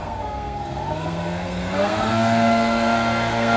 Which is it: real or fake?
fake